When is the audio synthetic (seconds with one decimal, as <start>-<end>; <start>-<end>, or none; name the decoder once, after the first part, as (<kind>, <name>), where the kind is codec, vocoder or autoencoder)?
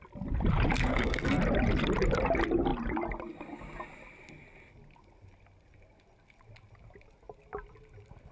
0.7-1.4 (codec, SNAC)